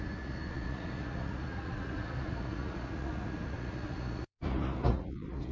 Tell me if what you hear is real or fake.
fake